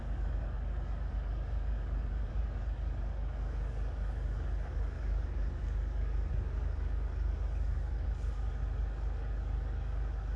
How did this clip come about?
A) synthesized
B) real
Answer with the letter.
A